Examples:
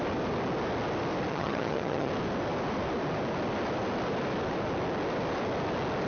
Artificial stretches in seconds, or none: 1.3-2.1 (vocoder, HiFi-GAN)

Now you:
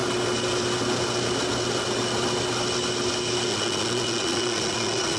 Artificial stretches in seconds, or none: 3.5-5.2 (vocoder, Vocos)

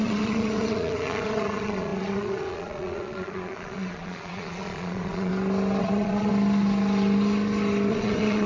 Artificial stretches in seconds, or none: 0.0-5.3 (vocoder, Vocos); 5.8-6.3; 7.9-8.5